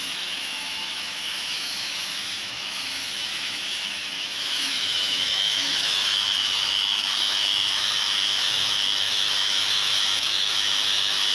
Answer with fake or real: fake